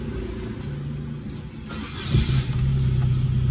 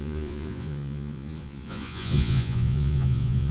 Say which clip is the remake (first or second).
second